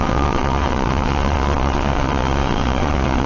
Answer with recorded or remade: remade